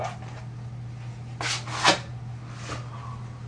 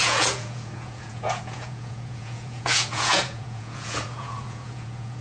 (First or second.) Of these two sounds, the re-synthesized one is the second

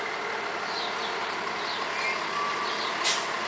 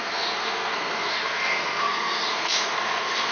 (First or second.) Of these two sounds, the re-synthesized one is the second